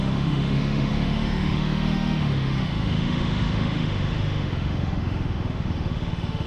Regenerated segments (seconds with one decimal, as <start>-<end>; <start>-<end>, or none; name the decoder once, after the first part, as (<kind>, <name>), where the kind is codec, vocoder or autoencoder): 0.0-6.5 (autoencoder, DAC-VAE)